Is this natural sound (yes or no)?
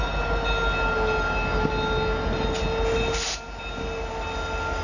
yes